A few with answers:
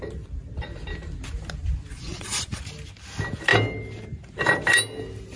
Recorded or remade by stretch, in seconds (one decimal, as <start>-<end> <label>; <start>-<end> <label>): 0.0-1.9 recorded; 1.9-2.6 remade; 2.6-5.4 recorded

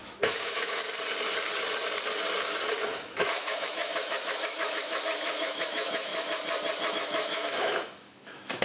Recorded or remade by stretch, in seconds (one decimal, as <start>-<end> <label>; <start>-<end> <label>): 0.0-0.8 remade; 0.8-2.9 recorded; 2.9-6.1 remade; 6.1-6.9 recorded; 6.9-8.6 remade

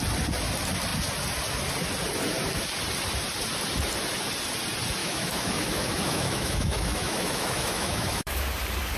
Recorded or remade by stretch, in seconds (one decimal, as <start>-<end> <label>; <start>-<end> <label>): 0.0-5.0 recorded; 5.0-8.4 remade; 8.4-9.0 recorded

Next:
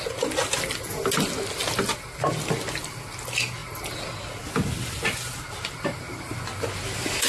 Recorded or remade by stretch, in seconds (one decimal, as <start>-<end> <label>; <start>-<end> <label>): 0.0-7.3 recorded

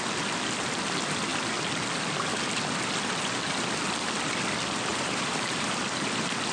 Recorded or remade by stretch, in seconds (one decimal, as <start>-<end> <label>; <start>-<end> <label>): 0.0-4.9 recorded; 4.9-5.8 remade; 5.8-6.5 recorded

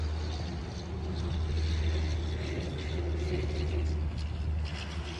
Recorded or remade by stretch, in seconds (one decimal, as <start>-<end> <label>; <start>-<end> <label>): 0.0-5.2 recorded

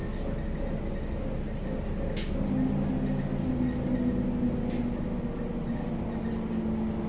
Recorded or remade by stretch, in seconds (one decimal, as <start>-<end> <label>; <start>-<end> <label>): 0.0-7.1 recorded

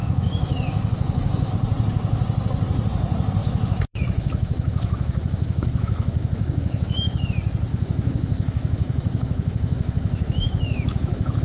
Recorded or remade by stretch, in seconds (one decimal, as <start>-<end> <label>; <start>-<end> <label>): 0.0-1.5 remade; 1.5-3.4 recorded; 3.4-7.3 remade; 7.3-7.7 recorded; 7.7-11.4 remade